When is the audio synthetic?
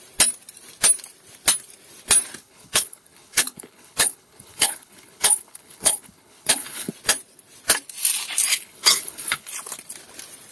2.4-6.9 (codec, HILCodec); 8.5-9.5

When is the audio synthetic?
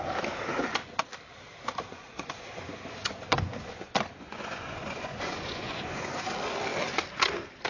0.5-1.0 (vocoder, Vocos); 1.9-6.2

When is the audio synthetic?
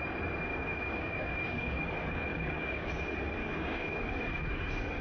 0.5-1.8 (codec, DAC); 2.3-2.9; 3.4-4.0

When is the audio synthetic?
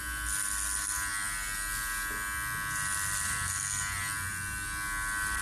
none